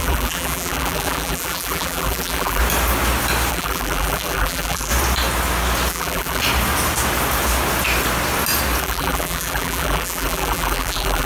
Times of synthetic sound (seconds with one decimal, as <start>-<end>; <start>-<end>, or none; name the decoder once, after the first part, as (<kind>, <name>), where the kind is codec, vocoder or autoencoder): 0.0-2.6 (vocoder, BigVGAN v2); 3.5-4.9; 5.9-6.4; 8.8-11.3